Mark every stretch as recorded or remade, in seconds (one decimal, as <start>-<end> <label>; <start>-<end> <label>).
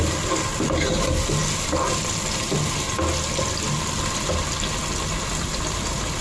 0.0-6.2 recorded